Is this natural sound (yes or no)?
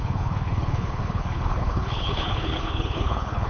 no